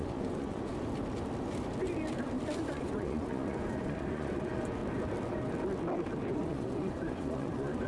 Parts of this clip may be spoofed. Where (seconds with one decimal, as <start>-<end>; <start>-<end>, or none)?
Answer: 0.0-0.7; 2.7-4.8; 6.3-7.9